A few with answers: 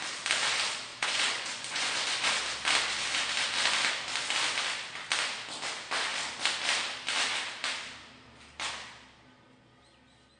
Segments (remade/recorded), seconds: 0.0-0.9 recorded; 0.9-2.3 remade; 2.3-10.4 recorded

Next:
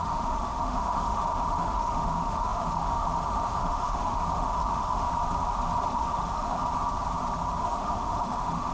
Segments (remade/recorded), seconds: 0.0-5.1 remade; 5.1-5.9 recorded; 5.9-6.6 remade; 6.6-7.6 recorded; 7.6-8.7 remade

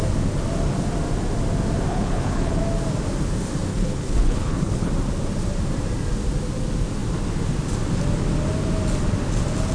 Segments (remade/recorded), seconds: 0.0-1.9 recorded; 1.9-2.6 remade; 2.6-3.7 recorded; 3.7-4.9 remade; 4.9-9.7 recorded

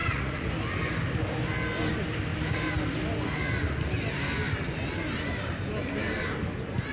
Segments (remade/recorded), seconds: 0.0-0.5 remade; 0.5-6.9 recorded